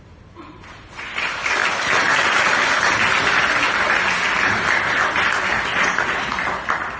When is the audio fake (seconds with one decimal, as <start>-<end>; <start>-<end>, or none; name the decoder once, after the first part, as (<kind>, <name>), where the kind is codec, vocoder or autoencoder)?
none